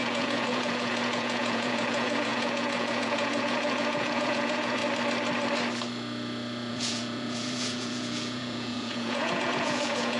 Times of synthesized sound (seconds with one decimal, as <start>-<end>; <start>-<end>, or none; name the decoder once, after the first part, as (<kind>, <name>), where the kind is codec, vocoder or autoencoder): 0.0-4.8 (vocoder, Vocos); 6.7-10.2